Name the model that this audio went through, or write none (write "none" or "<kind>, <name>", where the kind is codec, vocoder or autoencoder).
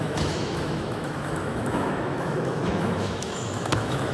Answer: autoencoder, DAC-VAE